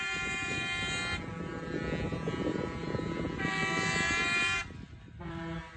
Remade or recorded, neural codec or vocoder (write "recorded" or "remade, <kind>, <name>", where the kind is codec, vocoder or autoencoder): recorded